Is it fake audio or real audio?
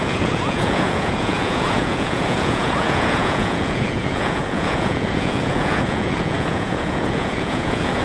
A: fake